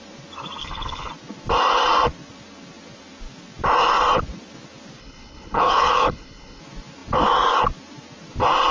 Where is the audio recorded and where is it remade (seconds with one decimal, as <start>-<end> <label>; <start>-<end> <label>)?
0.0-0.6 recorded; 0.6-1.1 remade; 1.1-5.0 recorded; 5.0-6.6 remade; 6.6-8.7 recorded